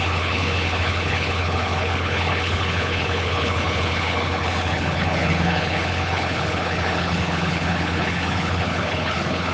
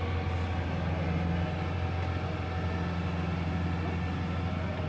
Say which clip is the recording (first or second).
second